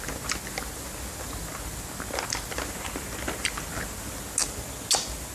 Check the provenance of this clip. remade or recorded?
recorded